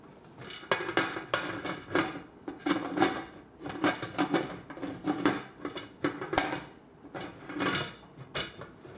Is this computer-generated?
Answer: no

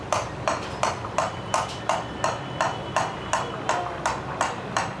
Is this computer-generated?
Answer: no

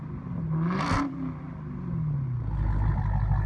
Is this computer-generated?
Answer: no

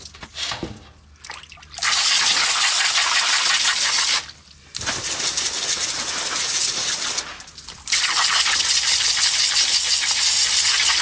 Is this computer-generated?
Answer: no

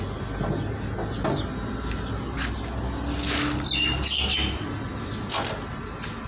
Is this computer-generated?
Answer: no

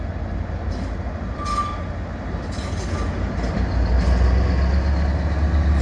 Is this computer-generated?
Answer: no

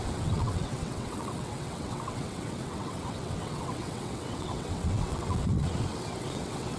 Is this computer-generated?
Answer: yes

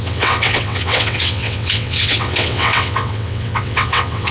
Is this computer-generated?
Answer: yes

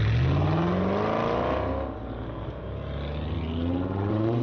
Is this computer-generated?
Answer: no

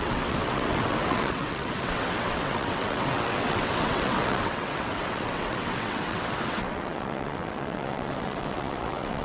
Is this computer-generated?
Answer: yes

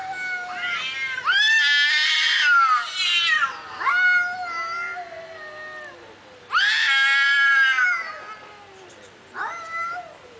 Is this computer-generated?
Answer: no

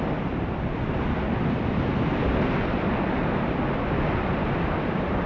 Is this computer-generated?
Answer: no